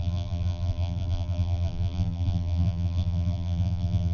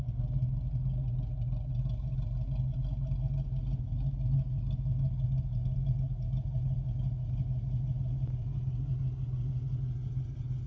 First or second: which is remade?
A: first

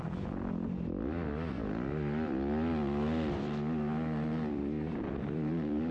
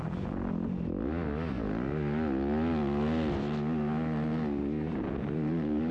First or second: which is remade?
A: first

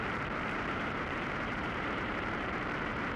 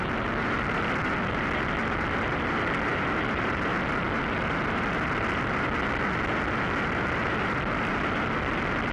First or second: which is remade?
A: first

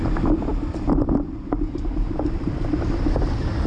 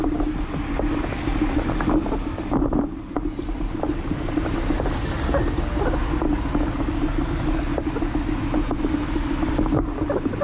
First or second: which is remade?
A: first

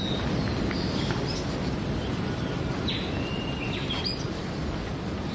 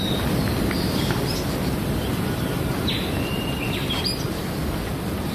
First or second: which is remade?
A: second